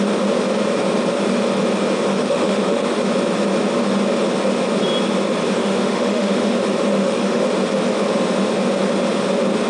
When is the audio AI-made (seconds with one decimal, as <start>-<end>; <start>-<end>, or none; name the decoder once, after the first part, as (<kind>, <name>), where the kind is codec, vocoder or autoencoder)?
2.1-3.0 (autoencoder, DAC-VAE); 5.6-6.5; 6.9-7.4